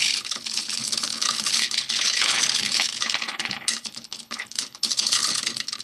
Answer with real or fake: fake